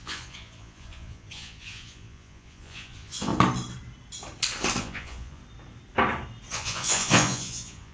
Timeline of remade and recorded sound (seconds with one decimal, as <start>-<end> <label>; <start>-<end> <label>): 0.0-3.3 remade; 3.3-4.8 recorded; 4.8-5.4 remade; 5.4-6.5 recorded; 6.5-7.9 remade